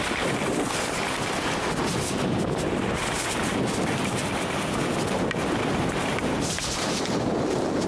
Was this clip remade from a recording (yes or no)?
no